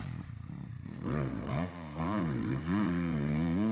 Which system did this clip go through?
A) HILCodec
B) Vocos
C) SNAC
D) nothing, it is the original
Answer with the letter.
B